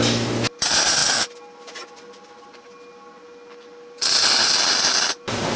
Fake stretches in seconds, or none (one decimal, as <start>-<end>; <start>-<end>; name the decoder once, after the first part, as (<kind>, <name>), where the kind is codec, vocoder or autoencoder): none